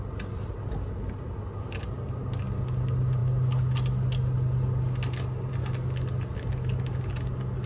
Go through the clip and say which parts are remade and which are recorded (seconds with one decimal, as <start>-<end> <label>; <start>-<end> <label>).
0.0-7.7 recorded